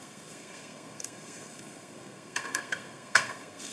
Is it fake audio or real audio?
fake